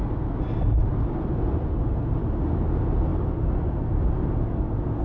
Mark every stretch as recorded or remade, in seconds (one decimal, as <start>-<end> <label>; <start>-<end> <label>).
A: 0.0-5.0 recorded